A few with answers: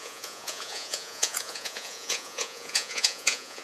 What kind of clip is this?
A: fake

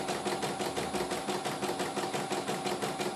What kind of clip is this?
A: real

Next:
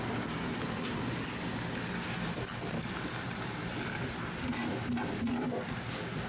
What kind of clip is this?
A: real